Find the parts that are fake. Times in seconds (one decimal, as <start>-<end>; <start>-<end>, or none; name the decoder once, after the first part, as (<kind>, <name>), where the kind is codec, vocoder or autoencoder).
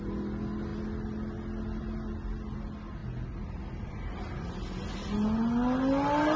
none